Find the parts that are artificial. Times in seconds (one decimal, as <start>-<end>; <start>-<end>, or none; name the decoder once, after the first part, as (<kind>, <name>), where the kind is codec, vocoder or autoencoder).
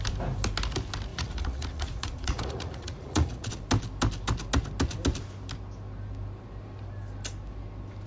1.1-3.6 (vocoder, Vocos)